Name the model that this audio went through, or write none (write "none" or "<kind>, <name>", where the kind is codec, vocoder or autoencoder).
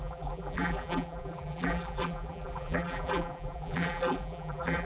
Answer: vocoder, BigVGAN v2